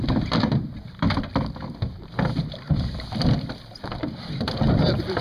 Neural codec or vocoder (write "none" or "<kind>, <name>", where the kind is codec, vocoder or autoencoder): vocoder, BigVGAN v2